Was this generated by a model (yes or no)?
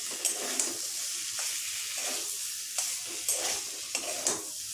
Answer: no